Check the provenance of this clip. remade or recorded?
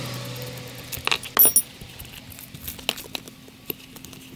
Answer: recorded